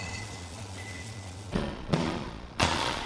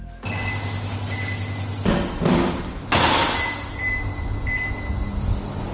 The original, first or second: second